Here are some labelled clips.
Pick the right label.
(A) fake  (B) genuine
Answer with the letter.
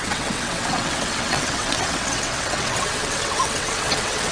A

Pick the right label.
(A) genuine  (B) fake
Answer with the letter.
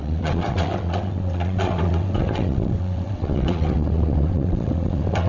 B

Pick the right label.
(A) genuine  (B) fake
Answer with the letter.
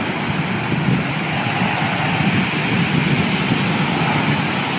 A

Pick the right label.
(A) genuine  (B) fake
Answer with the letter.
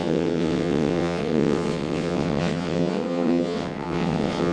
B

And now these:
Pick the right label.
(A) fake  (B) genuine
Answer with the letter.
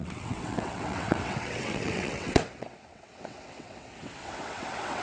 A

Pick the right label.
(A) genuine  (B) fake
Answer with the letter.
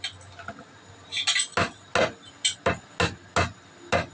A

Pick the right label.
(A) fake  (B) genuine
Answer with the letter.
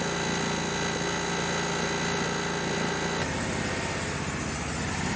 B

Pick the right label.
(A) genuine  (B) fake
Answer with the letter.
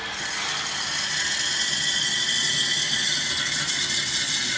A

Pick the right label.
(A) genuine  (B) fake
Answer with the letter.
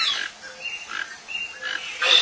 A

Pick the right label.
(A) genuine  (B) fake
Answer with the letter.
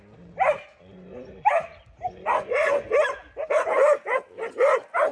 A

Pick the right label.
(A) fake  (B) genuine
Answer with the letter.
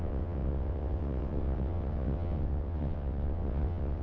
A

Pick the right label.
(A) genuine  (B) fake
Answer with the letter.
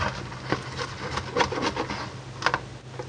A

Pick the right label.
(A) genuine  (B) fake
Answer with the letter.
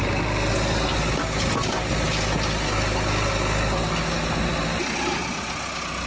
A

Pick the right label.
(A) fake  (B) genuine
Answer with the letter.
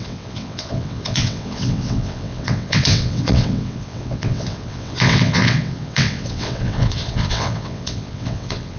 A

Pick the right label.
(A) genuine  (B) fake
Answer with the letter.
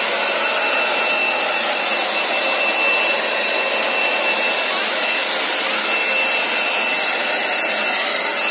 A